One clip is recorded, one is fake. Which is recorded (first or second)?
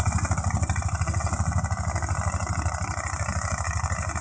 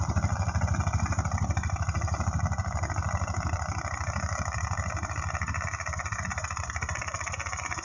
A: first